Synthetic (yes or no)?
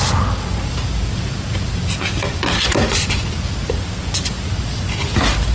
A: no